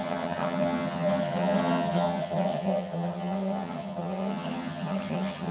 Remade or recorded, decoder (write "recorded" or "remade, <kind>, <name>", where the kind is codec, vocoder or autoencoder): remade, vocoder, HiFi-GAN